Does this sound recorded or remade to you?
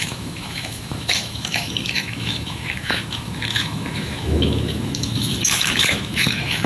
remade